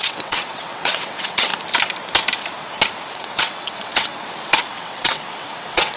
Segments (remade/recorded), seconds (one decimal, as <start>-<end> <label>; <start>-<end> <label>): 0.0-1.5 remade; 1.5-3.1 recorded; 3.1-4.1 remade; 4.1-4.7 recorded; 4.7-6.0 remade